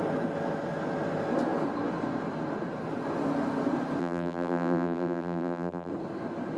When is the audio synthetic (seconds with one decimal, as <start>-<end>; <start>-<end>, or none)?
4.0-5.9